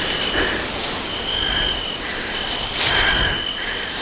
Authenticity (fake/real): real